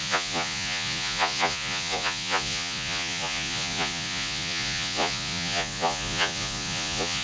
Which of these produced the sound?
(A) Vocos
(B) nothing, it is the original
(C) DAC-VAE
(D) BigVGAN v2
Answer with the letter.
A